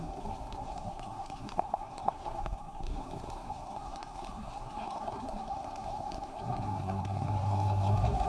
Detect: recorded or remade remade